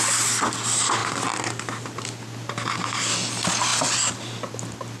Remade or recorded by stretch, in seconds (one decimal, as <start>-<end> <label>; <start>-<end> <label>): 0.0-5.0 recorded